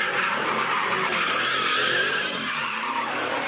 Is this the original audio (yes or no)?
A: no